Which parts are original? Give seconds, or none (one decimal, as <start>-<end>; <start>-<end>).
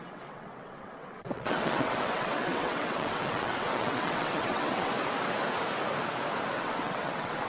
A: 4.9-6.5